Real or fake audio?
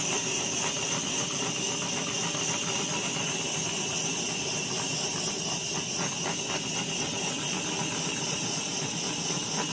real